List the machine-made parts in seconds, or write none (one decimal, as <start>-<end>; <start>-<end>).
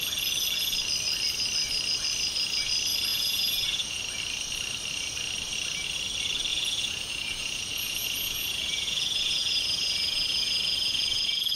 3.1-4.0; 6.5-11.6